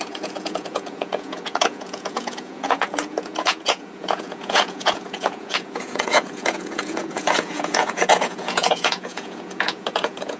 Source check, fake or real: fake